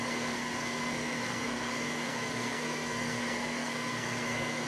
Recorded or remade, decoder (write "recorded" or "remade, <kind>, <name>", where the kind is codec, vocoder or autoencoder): remade, codec, SNAC